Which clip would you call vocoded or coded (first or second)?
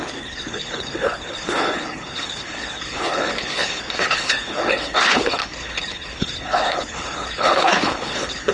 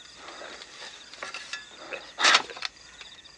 first